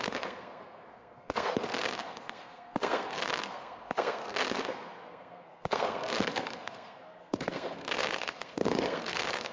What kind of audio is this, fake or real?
fake